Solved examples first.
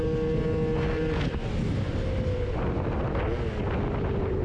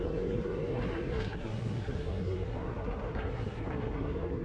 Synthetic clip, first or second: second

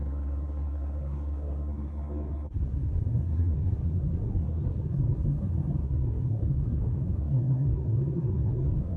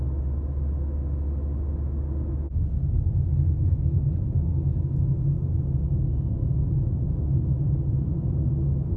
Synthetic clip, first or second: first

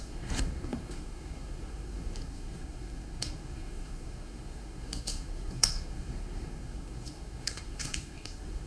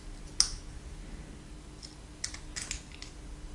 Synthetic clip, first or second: first